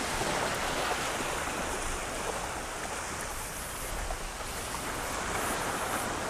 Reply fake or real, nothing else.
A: real